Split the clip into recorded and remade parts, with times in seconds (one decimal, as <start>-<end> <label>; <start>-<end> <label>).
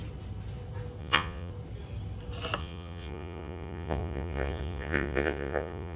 0.0-1.0 recorded; 1.0-1.5 remade; 1.5-2.6 recorded; 2.6-6.0 remade